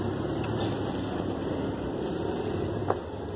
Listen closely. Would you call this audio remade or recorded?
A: recorded